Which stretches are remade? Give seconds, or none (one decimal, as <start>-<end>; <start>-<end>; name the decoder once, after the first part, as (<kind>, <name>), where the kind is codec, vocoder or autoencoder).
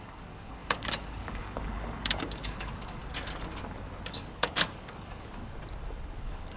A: 0.0-3.0 (codec, DAC); 4.1-5.4; 6.1-6.6